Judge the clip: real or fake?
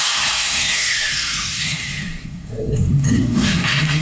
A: fake